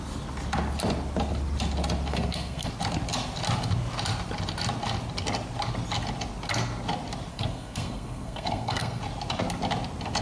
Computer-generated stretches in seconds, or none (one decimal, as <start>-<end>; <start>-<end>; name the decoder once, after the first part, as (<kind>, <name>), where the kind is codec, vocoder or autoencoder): 2.1-2.7 (codec, SNAC); 7.3-9.0